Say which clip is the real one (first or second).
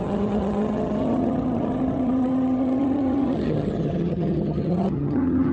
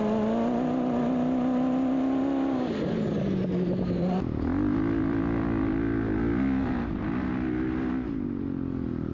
second